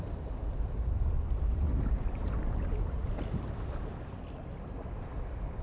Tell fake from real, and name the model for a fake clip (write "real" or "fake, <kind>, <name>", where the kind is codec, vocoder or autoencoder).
real